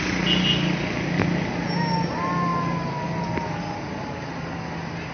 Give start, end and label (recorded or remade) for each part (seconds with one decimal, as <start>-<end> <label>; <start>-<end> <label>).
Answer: 0.0-5.1 recorded